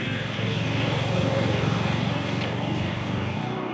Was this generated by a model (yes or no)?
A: yes